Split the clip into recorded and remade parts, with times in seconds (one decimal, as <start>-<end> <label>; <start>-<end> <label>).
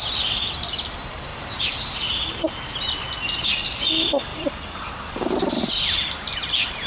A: 0.0-1.3 recorded; 1.3-2.9 remade; 2.9-4.3 recorded; 4.3-4.9 remade; 4.9-6.9 recorded